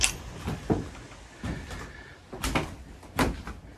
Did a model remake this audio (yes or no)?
no